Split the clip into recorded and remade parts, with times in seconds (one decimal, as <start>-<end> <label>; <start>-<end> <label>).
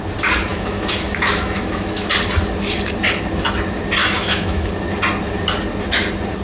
0.0-0.5 recorded; 0.5-2.1 remade; 2.1-4.0 recorded; 4.0-4.7 remade; 4.7-6.4 recorded